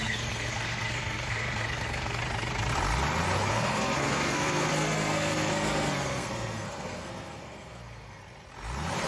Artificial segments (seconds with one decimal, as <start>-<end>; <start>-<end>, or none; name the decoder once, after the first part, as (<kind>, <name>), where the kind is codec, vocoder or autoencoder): 0.0-2.2 (codec, SNAC); 3.5-8.2